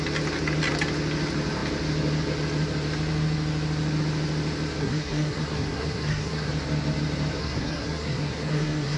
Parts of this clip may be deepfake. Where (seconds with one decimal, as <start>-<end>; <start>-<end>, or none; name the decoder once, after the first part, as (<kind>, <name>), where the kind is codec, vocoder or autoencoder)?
4.8-6.5 (codec, SNAC); 7.4-9.0